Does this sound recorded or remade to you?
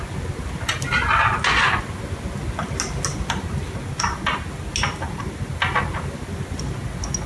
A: recorded